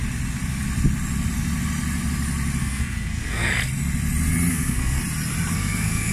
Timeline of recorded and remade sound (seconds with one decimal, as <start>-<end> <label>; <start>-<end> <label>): 0.0-2.6 recorded; 2.6-3.5 remade; 3.5-4.5 recorded; 4.5-5.0 remade; 5.0-5.5 recorded; 5.5-6.1 remade